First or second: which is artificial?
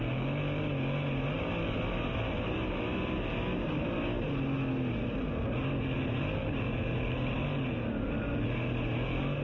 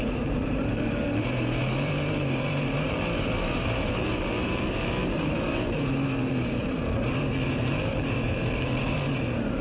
second